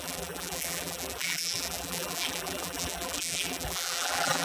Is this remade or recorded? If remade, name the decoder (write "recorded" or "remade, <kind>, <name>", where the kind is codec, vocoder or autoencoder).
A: remade, vocoder, BigVGAN v2